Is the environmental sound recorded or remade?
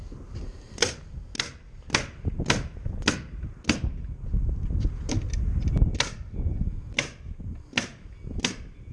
recorded